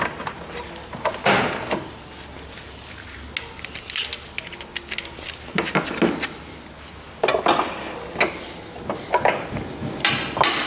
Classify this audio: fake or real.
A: real